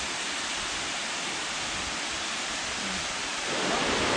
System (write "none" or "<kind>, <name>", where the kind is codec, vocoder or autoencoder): none